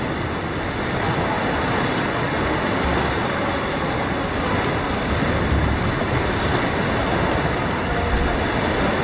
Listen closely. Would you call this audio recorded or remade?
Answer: recorded